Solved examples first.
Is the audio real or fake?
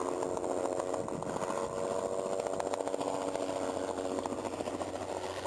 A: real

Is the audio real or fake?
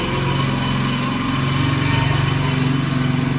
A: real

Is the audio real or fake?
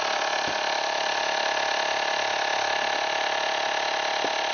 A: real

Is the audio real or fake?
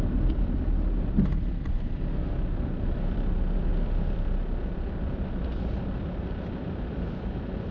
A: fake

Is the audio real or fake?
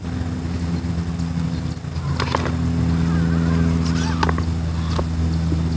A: real